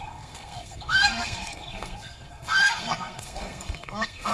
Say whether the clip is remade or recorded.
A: remade